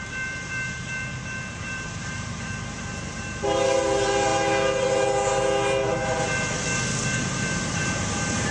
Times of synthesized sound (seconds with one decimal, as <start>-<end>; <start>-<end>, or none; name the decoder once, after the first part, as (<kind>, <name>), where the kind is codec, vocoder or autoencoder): 0.0-4.3 (vocoder, BigVGAN v2); 7.2-8.5